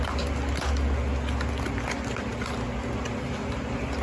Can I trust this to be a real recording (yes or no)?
yes